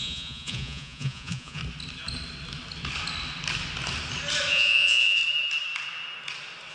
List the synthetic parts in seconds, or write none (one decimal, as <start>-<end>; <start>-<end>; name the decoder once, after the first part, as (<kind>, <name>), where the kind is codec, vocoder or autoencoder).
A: 0.0-1.6 (vocoder, Vocos); 4.5-5.2